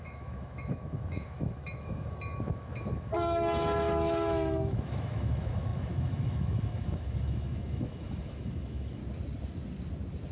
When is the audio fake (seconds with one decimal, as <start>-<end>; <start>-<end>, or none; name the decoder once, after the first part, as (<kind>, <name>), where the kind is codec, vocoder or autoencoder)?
0.0-9.0 (autoencoder, DAC-VAE)

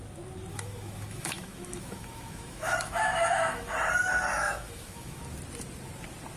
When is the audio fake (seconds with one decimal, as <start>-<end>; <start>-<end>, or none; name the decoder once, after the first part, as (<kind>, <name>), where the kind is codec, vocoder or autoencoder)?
0.5-3.7 (autoencoder, DAC-VAE); 4.3-5.2

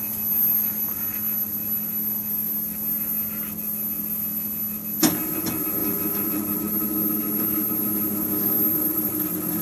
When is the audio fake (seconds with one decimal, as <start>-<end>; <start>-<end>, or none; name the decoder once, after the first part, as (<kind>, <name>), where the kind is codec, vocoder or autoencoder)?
none